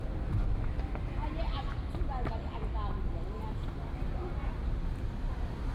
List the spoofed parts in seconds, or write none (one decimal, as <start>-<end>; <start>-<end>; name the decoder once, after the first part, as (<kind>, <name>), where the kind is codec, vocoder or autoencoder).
none